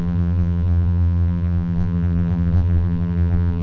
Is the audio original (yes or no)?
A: no